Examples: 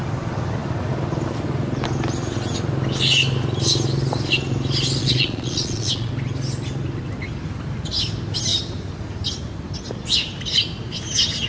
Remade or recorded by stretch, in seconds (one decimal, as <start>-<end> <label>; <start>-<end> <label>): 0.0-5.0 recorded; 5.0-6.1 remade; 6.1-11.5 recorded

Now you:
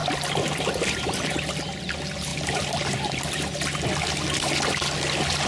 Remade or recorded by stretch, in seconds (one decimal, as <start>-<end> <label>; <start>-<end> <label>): 0.0-2.3 recorded; 2.3-3.2 remade; 3.2-5.5 recorded

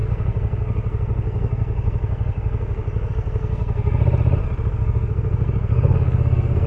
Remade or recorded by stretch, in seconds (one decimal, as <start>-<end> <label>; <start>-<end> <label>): 0.0-4.0 remade; 4.0-4.7 recorded; 4.7-6.7 remade

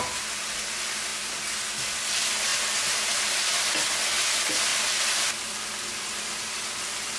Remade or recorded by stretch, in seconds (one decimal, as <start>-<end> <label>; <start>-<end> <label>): 0.0-4.7 recorded; 4.7-6.8 remade; 6.8-7.2 recorded